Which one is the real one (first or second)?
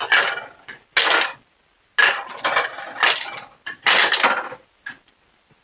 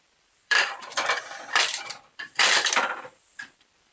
first